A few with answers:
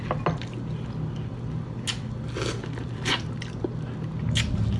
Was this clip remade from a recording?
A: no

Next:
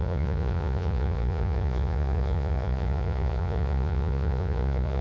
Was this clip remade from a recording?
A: yes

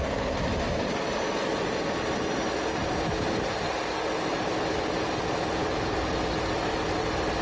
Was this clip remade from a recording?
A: no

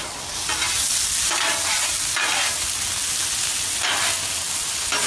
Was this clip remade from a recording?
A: no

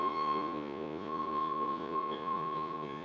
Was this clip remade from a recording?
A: yes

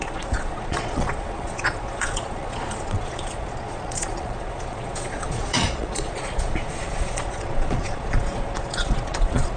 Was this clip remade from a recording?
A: yes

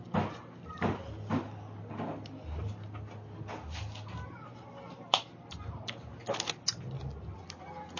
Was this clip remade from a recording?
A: no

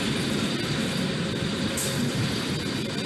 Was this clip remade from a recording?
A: no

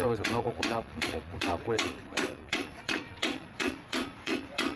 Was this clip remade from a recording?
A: yes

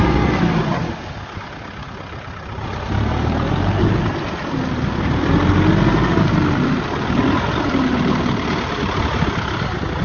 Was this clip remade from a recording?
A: no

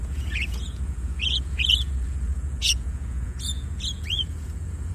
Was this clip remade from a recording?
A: yes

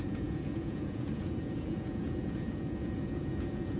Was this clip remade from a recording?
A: yes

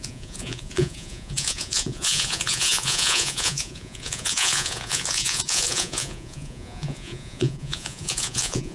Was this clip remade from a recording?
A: yes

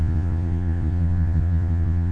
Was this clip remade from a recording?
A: yes